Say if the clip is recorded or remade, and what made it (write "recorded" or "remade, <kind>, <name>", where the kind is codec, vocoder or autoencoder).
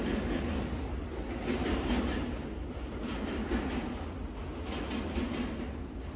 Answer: recorded